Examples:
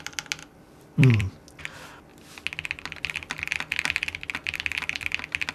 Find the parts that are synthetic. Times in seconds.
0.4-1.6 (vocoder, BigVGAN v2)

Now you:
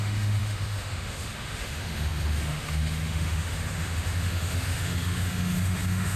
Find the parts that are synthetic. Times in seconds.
0.0-6.2 (autoencoder, DAC-VAE)

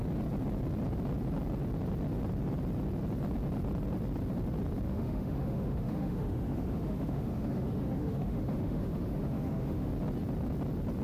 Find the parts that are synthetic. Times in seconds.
4.9-9.9 (autoencoder, DAC-VAE)